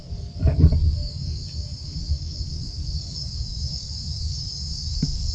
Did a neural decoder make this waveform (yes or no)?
yes